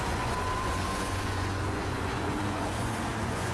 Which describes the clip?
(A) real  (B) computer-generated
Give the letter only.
B